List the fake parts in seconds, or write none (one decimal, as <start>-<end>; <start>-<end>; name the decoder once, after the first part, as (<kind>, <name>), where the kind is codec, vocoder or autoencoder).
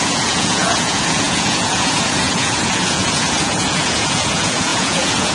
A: 0.0-5.3 (vocoder, Vocos)